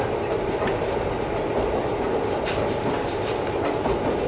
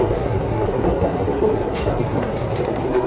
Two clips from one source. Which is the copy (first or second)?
second